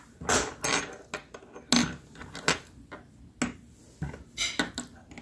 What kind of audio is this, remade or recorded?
recorded